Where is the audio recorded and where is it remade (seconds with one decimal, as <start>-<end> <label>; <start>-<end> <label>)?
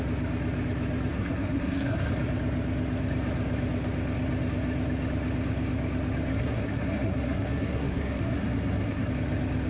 0.0-1.1 recorded; 1.1-2.1 remade; 2.1-6.3 recorded; 6.3-9.1 remade; 9.1-9.7 recorded